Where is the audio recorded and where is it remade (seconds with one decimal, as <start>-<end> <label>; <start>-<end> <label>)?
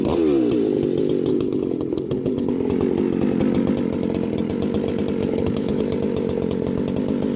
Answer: 0.0-1.3 recorded; 1.3-2.5 remade; 2.5-5.2 recorded; 5.2-5.8 remade; 5.8-7.4 recorded